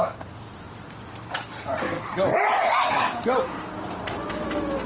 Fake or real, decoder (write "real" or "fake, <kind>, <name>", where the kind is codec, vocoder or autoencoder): real